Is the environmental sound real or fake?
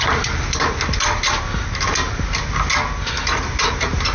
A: real